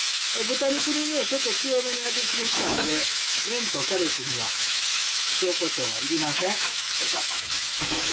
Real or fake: fake